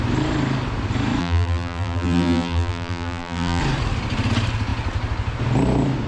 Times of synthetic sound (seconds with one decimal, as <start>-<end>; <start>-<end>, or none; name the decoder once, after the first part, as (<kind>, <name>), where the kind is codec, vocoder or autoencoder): 1.2-3.6 (vocoder, BigVGAN v2)